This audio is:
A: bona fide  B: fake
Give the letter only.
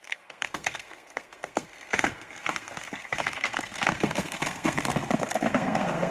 B